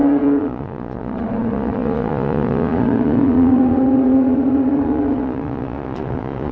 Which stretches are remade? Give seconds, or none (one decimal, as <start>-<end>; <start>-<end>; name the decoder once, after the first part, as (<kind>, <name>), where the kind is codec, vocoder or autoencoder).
0.0-6.5 (vocoder, Vocos)